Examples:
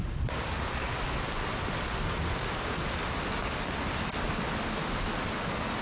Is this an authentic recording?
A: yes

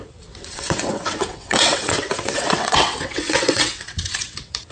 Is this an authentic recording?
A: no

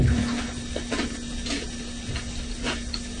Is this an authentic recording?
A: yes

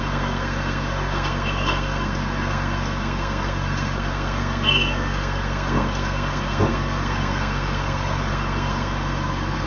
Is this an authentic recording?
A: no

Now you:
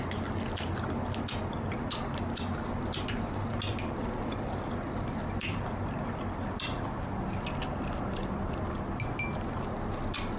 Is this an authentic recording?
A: yes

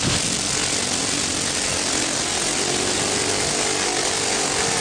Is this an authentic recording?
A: yes